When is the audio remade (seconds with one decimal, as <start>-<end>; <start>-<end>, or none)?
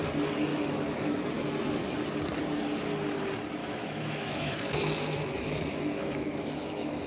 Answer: 0.5-1.3; 3.6-7.1